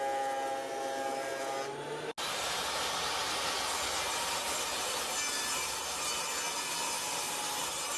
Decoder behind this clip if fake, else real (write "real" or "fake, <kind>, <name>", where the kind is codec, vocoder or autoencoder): real